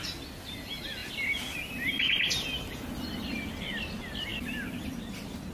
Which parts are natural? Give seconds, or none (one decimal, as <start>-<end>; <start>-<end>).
0.0-5.5